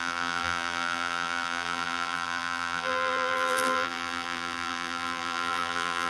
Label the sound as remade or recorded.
remade